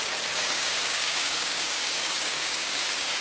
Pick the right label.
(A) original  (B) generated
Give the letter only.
B